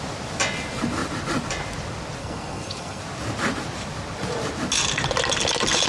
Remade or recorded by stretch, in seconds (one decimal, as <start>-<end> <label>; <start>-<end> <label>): 0.0-2.2 recorded; 2.2-3.0 remade; 3.0-5.9 recorded